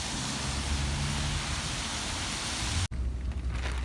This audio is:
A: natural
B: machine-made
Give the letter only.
A